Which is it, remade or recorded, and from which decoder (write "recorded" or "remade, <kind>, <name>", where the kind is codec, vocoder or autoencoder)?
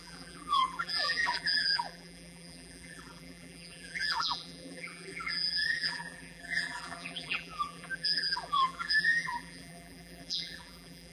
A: remade, vocoder, BigVGAN v2